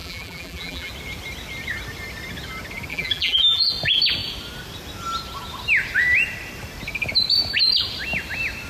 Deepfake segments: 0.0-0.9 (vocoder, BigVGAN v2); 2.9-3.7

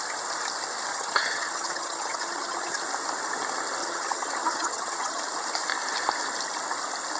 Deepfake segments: 0.9-2.8 (vocoder, HiFi-GAN); 3.8-5.2

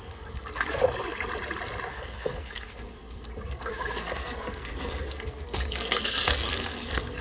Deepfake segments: 0.0-0.8 (codec, SNAC); 1.9-7.2

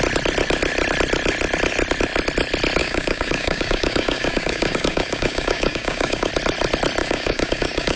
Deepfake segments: 2.8-6.3 (codec, DAC); 7.0-8.0

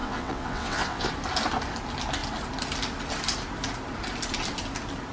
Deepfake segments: 0.0-1.1 (vocoder, WaveNeXt)